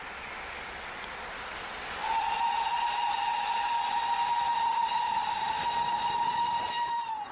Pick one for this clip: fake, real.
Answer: real